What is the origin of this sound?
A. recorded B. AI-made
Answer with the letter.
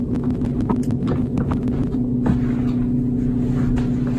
A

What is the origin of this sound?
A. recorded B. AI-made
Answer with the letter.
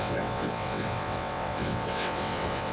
B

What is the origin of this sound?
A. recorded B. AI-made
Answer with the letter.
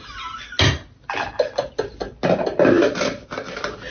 A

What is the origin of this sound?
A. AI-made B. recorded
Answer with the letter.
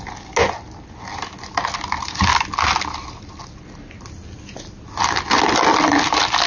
B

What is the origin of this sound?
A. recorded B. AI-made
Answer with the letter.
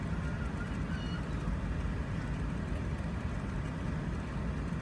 A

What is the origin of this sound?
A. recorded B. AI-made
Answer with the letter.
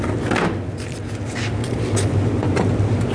A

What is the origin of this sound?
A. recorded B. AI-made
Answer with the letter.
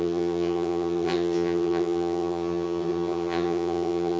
B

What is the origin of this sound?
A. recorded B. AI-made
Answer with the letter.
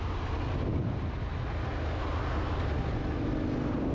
A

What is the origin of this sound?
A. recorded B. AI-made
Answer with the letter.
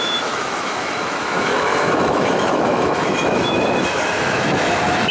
B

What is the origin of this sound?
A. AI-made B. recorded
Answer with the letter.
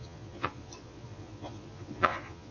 A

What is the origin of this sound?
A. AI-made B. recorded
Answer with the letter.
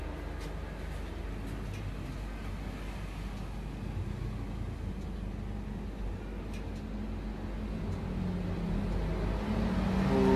B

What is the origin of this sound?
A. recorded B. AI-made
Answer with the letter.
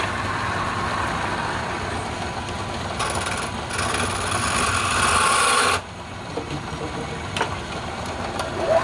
A